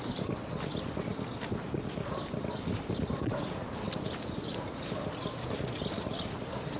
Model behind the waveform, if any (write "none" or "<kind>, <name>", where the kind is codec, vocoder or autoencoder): none